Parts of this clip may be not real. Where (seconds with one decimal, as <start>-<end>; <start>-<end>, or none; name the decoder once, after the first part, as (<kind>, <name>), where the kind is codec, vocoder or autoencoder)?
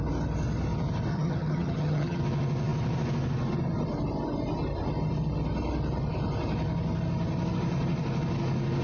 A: 1.1-2.2 (vocoder, HiFi-GAN)